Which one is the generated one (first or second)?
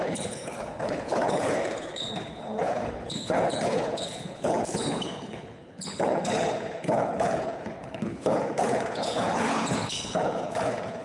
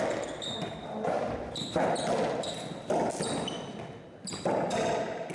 first